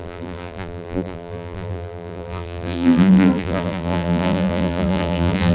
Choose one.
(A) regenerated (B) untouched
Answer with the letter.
A